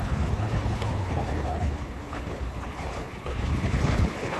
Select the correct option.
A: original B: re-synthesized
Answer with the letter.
B